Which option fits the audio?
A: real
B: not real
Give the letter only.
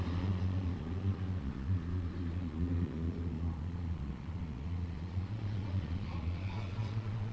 B